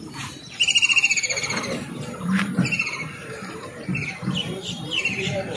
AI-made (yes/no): yes